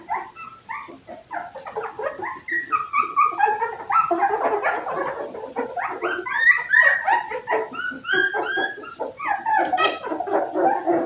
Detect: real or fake real